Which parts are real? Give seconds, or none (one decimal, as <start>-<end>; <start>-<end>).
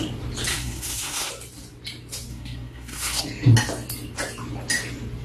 0.0-0.5; 1.3-2.3; 3.2-5.2